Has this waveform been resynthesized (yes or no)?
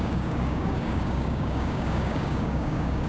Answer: yes